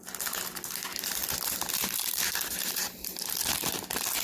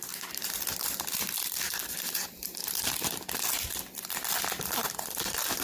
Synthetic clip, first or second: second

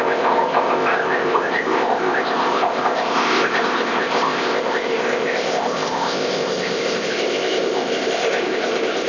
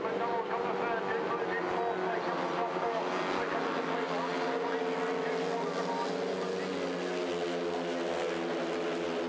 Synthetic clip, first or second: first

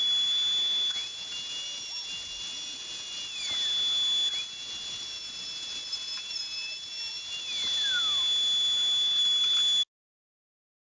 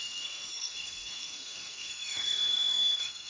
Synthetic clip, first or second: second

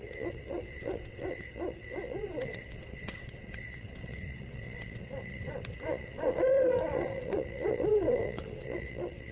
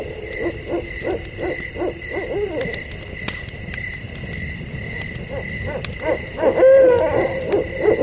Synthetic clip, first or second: first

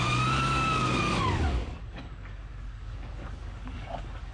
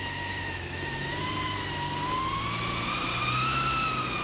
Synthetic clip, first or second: first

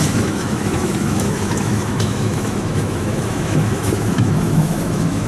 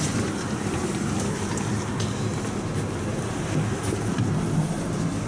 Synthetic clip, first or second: first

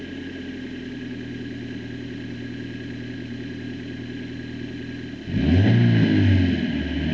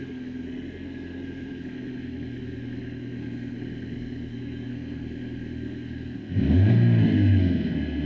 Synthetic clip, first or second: second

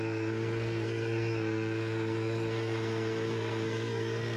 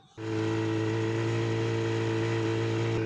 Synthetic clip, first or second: first